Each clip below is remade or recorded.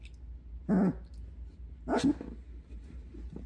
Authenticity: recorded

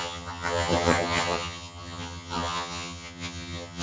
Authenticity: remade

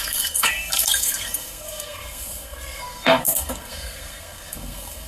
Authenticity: remade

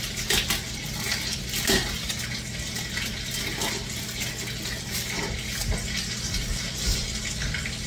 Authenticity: recorded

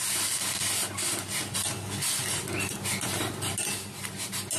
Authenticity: recorded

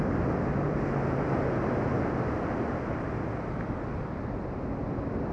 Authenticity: recorded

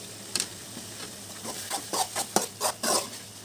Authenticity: recorded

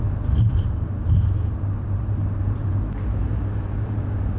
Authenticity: remade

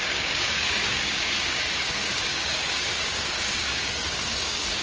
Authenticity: remade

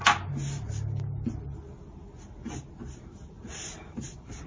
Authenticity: recorded